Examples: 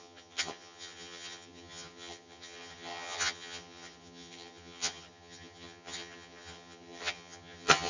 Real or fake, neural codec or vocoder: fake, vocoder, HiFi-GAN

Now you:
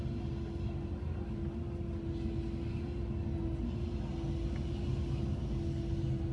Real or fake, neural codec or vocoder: real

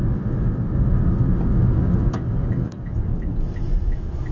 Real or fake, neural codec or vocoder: real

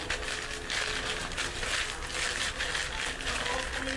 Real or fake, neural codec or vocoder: real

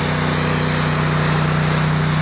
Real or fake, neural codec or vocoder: real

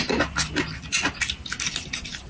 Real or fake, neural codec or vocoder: real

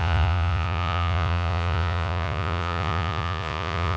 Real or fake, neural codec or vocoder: fake, vocoder, Vocos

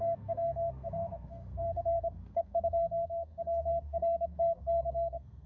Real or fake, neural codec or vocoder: fake, codec, SNAC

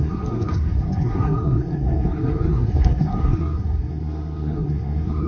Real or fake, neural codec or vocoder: fake, codec, SNAC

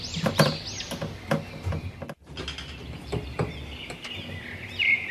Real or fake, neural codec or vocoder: real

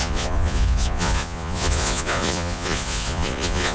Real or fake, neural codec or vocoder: fake, vocoder, Vocos